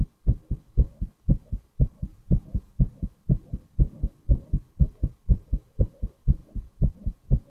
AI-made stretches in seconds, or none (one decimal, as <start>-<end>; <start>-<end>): 2.1-2.8; 6.4-7.5

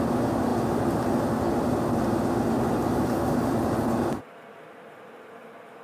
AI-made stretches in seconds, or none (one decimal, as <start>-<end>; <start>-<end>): none

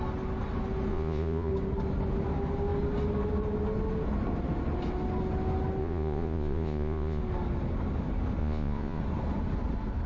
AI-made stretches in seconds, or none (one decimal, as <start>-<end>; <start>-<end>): 0.9-1.5; 5.8-7.2; 8.4-9.0

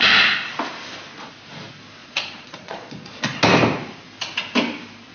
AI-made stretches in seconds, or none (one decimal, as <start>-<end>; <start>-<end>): 2.0-3.4

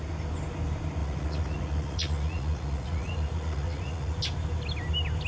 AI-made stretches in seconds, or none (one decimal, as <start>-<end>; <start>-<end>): 1.0-4.2

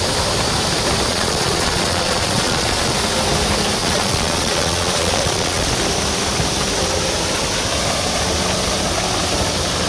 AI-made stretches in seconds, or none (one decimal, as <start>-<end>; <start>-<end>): 1.1-2.9; 3.8-5.7

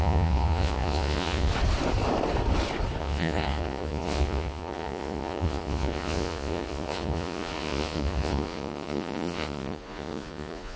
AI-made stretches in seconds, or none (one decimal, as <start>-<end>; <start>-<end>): 0.0-1.5; 3.0-10.8